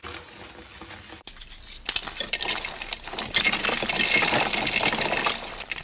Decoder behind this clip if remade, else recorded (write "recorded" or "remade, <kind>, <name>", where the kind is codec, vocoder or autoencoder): recorded